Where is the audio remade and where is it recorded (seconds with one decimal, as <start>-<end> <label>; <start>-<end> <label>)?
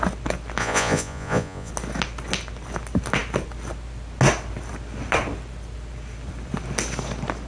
0.0-0.6 recorded; 0.6-1.7 remade; 1.7-7.5 recorded